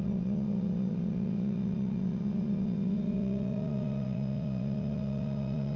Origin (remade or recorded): remade